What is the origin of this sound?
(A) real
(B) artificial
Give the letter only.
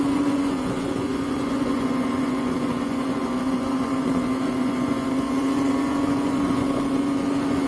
B